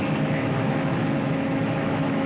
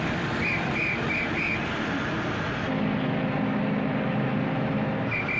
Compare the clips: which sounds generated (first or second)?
first